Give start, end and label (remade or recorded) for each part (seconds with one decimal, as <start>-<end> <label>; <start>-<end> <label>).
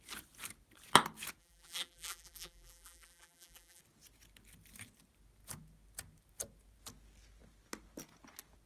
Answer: 0.0-1.4 recorded; 1.4-3.8 remade; 3.8-8.7 recorded